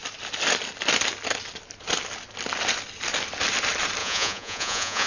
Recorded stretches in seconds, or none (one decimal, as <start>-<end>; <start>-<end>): 0.0-4.0